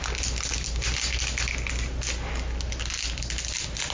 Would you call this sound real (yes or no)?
yes